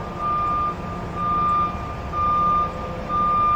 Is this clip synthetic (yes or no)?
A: no